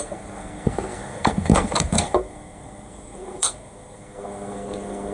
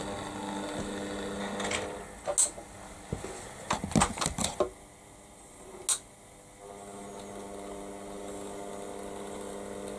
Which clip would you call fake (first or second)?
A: first